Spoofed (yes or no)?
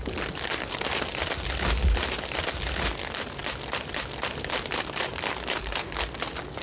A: no